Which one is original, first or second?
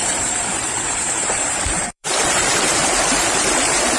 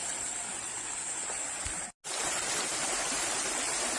second